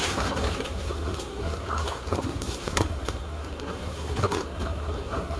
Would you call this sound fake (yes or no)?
yes